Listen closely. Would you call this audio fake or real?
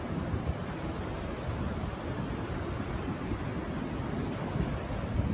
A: real